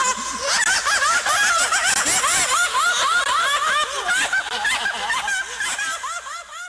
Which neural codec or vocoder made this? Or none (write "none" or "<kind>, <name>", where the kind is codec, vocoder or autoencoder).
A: none